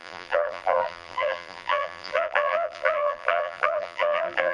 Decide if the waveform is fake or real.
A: fake